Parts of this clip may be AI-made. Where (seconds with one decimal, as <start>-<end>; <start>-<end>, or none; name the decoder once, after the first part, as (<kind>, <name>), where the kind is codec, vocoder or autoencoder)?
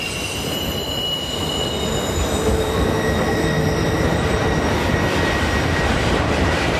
5.9-6.8 (vocoder, BigVGAN v2)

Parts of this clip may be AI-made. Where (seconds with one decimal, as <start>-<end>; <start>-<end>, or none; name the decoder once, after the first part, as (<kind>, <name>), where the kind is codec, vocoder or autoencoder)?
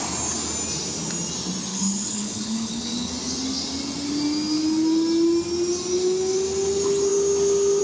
1.7-3.1 (codec, HILCodec)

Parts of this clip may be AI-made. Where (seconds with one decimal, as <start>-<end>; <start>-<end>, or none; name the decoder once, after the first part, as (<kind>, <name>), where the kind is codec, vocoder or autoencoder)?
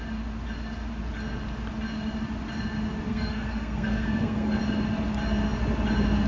3.1-4.6 (codec, SNAC)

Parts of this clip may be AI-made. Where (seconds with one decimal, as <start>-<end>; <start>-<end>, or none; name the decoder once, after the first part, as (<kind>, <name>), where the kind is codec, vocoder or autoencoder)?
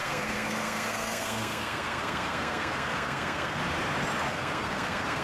0.0-3.6 (codec, SNAC); 4.3-5.2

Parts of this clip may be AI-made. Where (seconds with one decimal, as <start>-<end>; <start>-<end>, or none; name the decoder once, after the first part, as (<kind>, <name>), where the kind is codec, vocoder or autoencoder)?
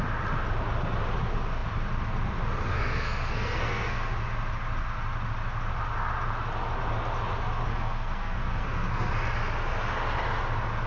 2.7-4.1 (codec, SNAC); 7.7-9.1